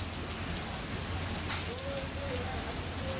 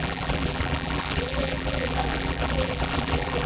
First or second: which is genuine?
first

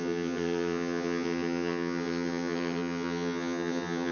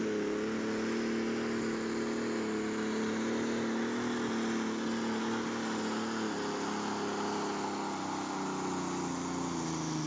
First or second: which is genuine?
second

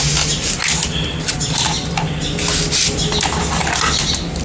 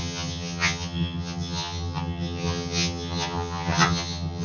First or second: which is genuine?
first